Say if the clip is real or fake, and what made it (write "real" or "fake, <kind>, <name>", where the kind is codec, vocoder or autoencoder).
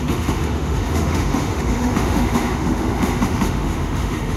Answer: fake, autoencoder, DAC-VAE